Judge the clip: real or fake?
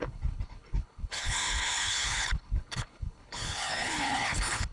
fake